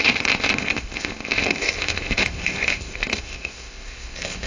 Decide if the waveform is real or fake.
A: fake